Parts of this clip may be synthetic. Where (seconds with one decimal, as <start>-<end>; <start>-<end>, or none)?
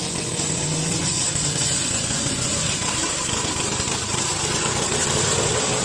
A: 0.0-2.9